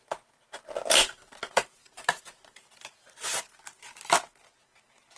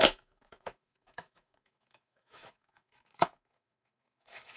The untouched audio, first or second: first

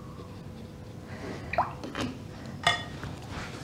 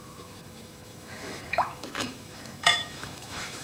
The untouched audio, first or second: first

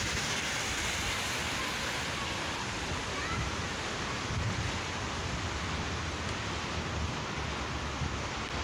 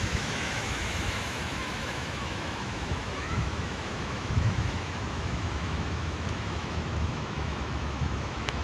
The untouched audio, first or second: first